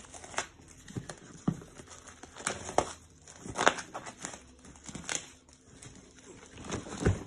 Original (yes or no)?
yes